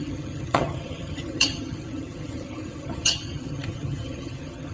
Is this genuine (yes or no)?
no